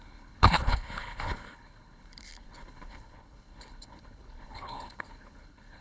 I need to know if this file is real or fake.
fake